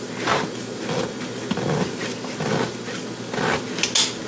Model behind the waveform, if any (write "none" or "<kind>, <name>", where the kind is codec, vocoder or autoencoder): none